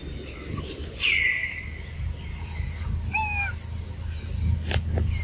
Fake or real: real